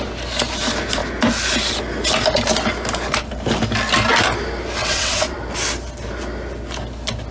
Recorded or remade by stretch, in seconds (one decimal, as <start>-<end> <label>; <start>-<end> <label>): 0.0-4.8 recorded; 4.8-5.4 remade; 5.4-7.3 recorded